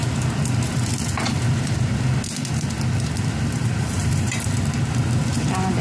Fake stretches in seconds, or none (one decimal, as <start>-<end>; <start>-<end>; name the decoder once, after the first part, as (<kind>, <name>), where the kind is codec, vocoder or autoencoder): 3.6-4.4 (vocoder, BigVGAN v2)